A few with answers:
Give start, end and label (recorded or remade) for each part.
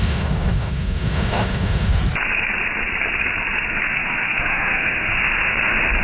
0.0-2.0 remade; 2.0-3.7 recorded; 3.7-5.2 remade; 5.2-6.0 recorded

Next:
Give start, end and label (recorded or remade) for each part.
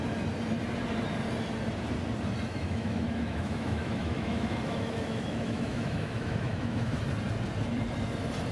0.0-2.5 recorded; 2.5-7.0 remade; 7.0-8.5 recorded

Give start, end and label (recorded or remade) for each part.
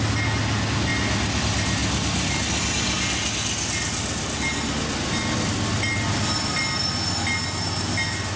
0.0-8.4 recorded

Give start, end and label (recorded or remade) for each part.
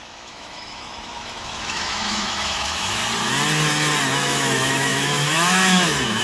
0.0-3.0 remade; 3.0-4.1 recorded; 4.1-6.2 remade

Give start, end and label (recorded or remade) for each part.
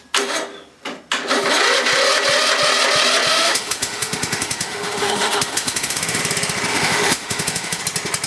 0.0-3.3 recorded; 3.3-6.2 remade; 6.2-6.7 recorded; 6.7-7.8 remade; 7.8-8.3 recorded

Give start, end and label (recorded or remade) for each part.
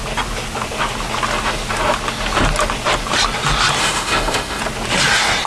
0.0-3.8 recorded; 3.8-4.6 remade; 4.6-5.5 recorded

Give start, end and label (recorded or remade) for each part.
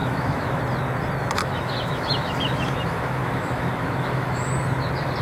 0.0-0.6 remade; 0.6-1.4 recorded; 1.4-4.5 remade; 4.5-5.2 recorded